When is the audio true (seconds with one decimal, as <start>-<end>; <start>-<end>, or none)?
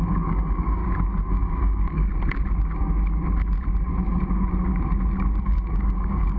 0.8-1.3; 2.1-5.4